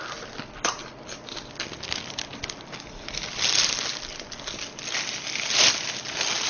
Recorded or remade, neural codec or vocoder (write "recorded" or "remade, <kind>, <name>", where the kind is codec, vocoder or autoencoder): recorded